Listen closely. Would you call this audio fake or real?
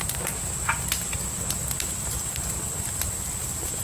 real